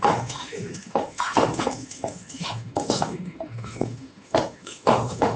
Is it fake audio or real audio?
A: fake